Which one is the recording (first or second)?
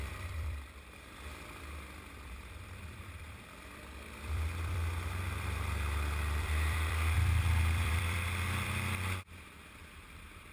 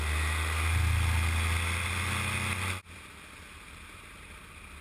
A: second